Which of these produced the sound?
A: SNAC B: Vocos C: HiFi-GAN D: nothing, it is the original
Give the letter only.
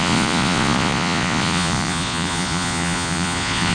B